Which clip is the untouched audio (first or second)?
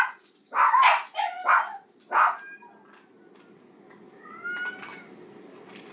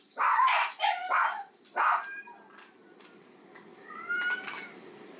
first